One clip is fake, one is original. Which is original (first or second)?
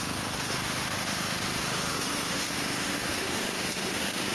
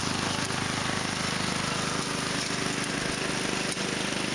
second